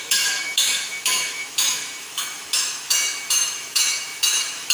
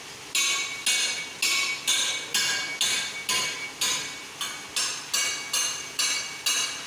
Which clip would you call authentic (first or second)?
second